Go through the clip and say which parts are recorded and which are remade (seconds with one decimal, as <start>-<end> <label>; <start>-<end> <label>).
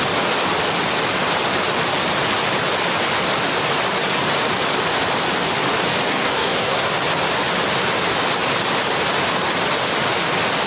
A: 0.0-6.1 recorded; 6.1-6.9 remade; 6.9-10.7 recorded